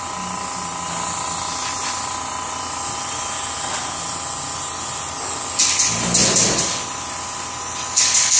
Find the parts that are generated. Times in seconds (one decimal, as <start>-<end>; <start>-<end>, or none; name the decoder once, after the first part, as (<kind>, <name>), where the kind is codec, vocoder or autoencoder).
none